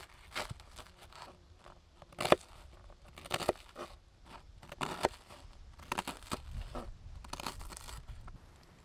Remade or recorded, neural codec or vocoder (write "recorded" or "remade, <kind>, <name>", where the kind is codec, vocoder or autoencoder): recorded